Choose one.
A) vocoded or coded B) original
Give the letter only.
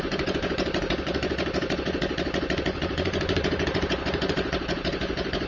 A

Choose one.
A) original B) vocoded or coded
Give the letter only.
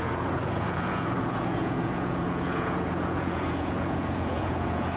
B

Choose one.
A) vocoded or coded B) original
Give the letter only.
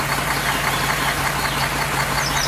B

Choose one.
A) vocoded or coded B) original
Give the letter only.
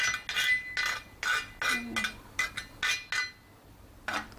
B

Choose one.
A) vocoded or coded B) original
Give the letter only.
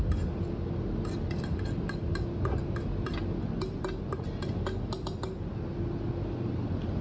B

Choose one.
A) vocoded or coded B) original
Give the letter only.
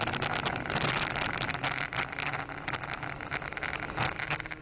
B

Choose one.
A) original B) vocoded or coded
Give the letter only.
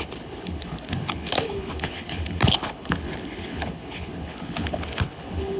B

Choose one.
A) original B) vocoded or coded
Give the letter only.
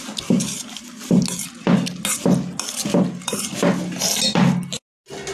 A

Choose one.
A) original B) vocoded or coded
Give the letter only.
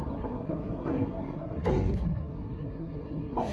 B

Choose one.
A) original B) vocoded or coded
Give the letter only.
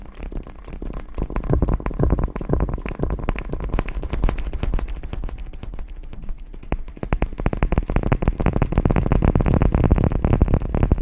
A